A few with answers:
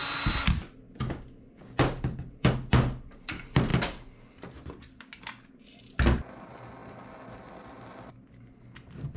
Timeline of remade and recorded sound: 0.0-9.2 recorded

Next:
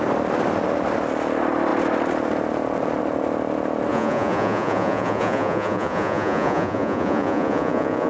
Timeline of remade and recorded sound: 0.0-3.9 recorded; 3.9-8.1 remade

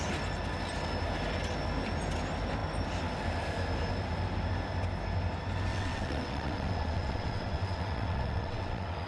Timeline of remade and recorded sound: 0.0-5.7 recorded; 5.7-9.1 remade

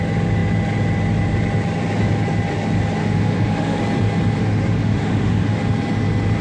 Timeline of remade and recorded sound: 0.0-3.0 recorded; 3.0-3.8 remade; 3.8-4.4 recorded; 4.4-5.6 remade; 5.6-6.4 recorded